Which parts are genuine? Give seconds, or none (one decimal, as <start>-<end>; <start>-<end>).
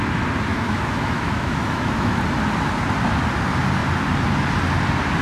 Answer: 0.0-0.5; 2.2-5.2